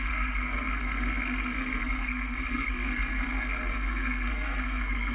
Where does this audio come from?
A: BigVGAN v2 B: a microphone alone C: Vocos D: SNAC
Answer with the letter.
D